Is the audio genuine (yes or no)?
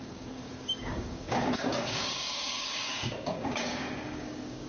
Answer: no